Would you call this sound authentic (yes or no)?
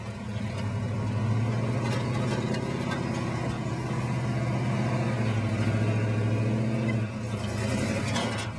yes